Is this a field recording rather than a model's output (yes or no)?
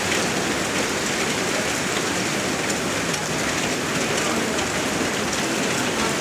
yes